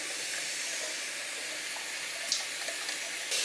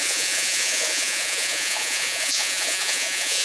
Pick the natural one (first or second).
first